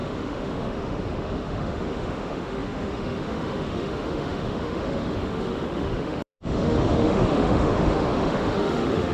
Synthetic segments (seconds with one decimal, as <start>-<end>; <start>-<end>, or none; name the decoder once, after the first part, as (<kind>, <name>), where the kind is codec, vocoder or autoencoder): 0.0-9.1 (autoencoder, DAC-VAE)